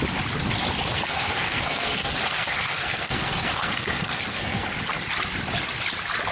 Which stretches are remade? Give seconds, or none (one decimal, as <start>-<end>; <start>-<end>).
0.9-4.7